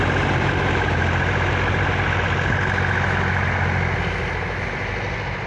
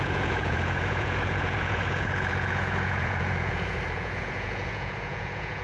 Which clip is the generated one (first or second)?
second